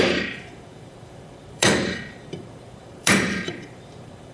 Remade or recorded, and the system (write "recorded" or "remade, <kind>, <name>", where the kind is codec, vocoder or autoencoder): remade, vocoder, BigVGAN v2